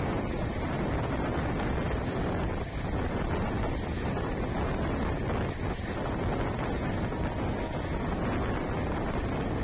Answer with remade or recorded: recorded